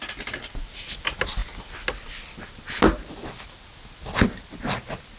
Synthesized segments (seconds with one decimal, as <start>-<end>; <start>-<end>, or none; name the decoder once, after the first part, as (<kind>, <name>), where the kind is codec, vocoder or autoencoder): none